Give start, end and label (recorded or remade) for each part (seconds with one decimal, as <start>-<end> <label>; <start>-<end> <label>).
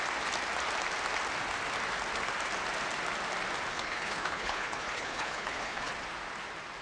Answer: 0.0-3.7 recorded; 3.7-5.9 remade; 5.9-6.8 recorded